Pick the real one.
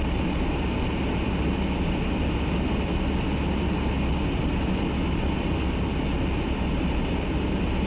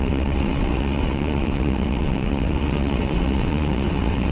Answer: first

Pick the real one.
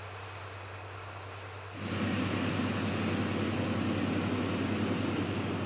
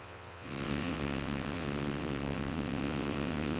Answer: first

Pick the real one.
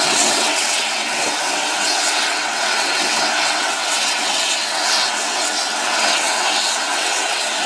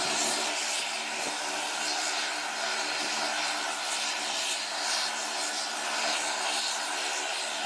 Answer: second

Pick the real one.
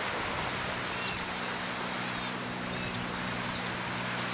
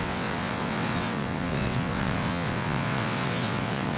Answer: first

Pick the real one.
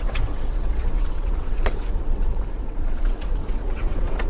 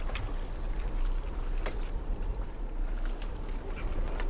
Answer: second